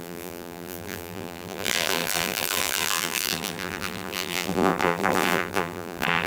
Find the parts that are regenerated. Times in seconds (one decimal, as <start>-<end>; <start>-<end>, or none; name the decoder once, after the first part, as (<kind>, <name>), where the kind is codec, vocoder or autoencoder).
0.0-6.3 (vocoder, BigVGAN v2)